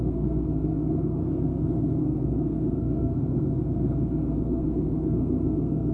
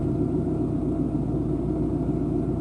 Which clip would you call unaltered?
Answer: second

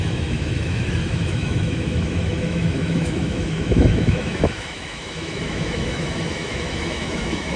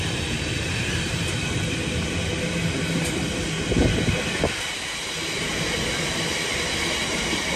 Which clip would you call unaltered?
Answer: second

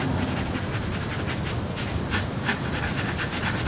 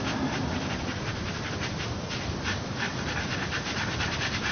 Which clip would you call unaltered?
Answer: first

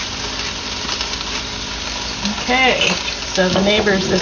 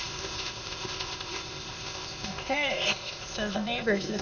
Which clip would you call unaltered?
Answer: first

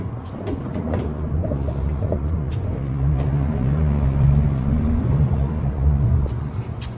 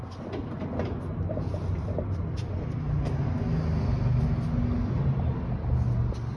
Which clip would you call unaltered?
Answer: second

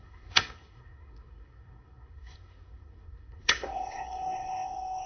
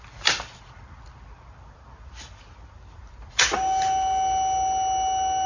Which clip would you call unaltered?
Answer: second